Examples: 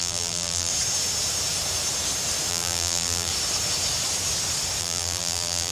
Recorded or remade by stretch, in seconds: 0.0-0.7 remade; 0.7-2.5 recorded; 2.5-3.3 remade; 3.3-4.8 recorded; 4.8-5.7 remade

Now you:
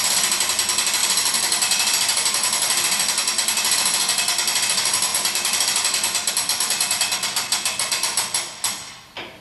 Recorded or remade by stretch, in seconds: 0.0-1.0 recorded; 1.0-4.0 remade; 4.0-5.1 recorded; 5.1-6.3 remade; 6.3-9.4 recorded

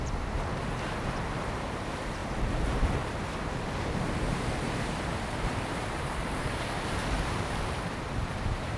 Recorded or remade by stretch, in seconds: 0.0-0.5 remade; 0.5-1.2 recorded; 1.2-8.8 remade

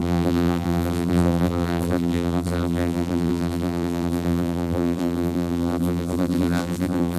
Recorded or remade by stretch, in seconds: 0.0-7.2 remade

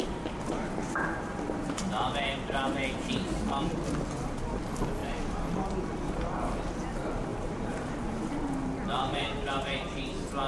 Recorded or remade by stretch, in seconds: 0.0-7.3 recorded; 7.3-8.5 remade; 8.5-9.1 recorded; 9.1-10.0 remade; 10.0-10.5 recorded

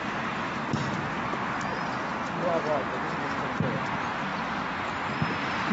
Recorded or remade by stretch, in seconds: 0.0-4.3 recorded; 4.3-5.7 remade

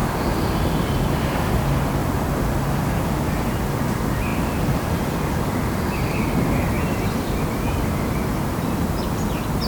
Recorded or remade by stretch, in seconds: 0.0-1.6 remade; 1.6-4.3 recorded; 4.3-8.6 remade; 8.6-9.7 recorded

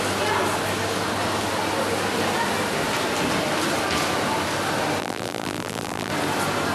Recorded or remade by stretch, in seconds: 0.0-5.0 recorded; 5.0-6.1 remade; 6.1-6.7 recorded